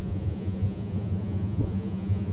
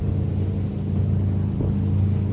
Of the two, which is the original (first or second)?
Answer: second